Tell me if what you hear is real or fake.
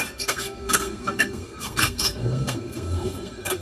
fake